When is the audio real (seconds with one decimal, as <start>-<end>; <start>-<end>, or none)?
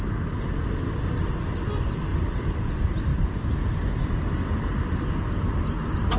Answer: 0.0-6.2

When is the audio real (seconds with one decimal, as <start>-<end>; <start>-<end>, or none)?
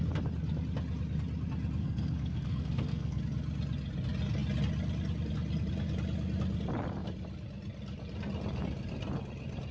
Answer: 0.0-1.8; 3.2-9.7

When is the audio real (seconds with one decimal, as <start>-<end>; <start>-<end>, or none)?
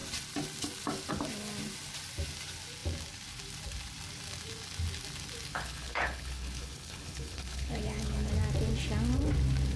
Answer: 0.0-5.5; 8.3-9.8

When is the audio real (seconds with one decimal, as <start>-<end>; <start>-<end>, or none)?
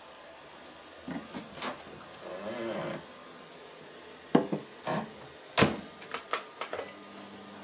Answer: 0.0-7.6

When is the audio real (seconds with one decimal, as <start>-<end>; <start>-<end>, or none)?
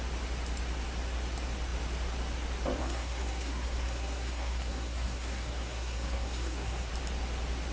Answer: 0.0-2.8; 6.9-7.7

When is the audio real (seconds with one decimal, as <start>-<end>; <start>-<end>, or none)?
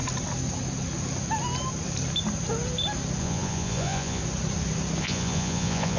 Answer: 0.0-3.2; 4.2-5.0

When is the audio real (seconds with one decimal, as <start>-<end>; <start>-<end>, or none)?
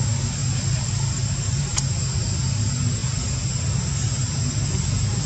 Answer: 0.0-0.4; 1.8-5.3